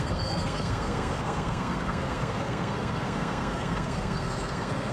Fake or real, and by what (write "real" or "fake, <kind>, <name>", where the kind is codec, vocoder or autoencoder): fake, codec, SNAC